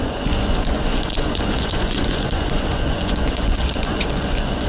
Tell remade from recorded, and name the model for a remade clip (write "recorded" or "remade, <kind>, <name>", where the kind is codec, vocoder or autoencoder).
remade, vocoder, Vocos